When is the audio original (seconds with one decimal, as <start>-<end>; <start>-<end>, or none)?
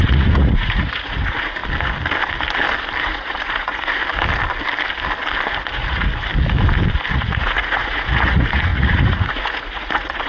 1.6-3.0; 4.0-5.5; 6.3-7.1